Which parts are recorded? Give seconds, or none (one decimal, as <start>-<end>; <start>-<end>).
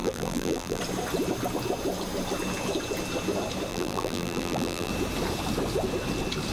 0.8-3.7; 4.9-6.5